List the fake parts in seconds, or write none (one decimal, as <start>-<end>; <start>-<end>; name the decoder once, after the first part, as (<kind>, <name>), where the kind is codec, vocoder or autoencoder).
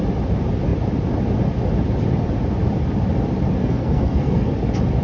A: 3.6-4.5 (codec, SNAC)